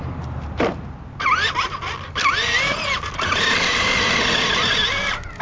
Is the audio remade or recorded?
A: recorded